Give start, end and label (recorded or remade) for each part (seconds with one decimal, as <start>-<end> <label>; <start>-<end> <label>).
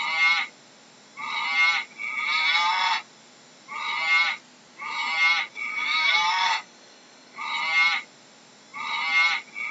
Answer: 0.0-5.7 recorded; 5.7-7.4 remade; 7.4-9.7 recorded